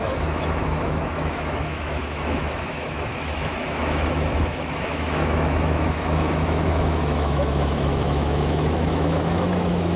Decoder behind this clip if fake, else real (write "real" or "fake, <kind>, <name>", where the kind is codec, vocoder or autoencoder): fake, autoencoder, DAC-VAE